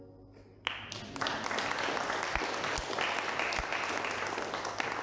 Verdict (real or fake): real